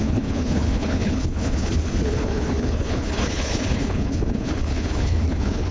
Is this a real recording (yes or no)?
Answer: no